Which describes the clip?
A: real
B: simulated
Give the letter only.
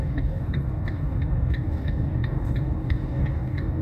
B